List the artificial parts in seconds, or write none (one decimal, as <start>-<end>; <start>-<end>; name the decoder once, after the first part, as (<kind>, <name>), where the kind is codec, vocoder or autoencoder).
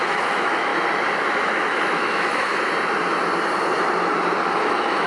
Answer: 0.0-0.7 (autoencoder, DAC-VAE); 1.3-2.5; 4.6-5.1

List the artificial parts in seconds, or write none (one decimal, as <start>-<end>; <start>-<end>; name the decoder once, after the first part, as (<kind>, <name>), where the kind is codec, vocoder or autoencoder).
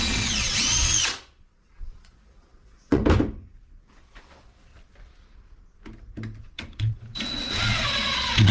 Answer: 0.0-3.0 (vocoder, Vocos); 3.9-4.7; 6.4-8.5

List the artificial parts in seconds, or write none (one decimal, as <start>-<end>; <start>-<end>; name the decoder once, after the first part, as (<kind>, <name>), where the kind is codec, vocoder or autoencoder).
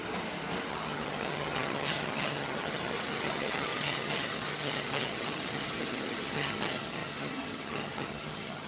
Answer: 0.7-8.7 (vocoder, HiFi-GAN)